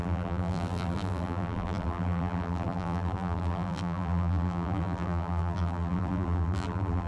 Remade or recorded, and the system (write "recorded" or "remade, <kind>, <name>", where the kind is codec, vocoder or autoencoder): remade, vocoder, BigVGAN v2